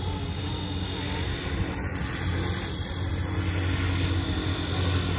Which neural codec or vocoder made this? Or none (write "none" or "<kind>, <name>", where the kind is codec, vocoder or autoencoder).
none